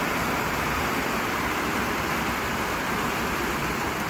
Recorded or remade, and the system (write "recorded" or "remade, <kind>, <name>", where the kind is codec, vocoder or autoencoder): recorded